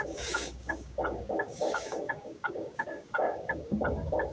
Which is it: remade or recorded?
remade